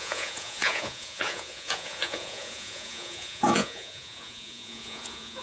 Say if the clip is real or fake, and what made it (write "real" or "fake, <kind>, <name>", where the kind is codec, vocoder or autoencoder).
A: fake, vocoder, Vocos